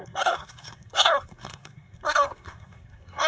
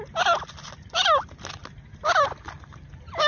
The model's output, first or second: first